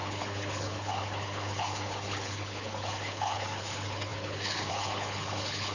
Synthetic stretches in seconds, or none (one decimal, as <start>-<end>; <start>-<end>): 0.0-5.7